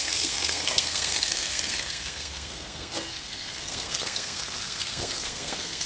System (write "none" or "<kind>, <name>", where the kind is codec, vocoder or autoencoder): codec, SNAC